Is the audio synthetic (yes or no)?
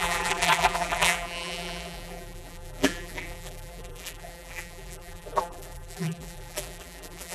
yes